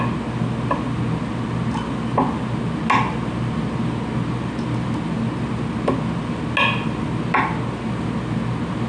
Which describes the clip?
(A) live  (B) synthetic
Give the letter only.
A